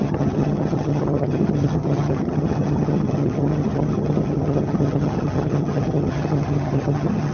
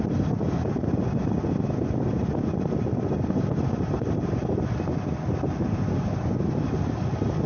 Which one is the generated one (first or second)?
first